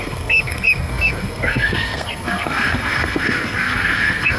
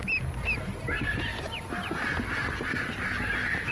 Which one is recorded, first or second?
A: second